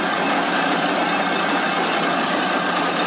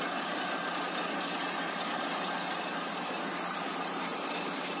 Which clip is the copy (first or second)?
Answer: first